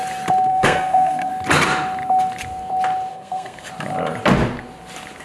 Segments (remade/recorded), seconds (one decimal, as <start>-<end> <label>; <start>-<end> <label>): 0.0-0.5 recorded; 0.5-1.3 remade; 1.3-3.1 recorded; 3.1-3.7 remade; 3.7-5.2 recorded